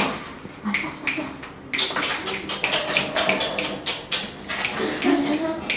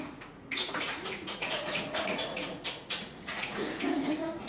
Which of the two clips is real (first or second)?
first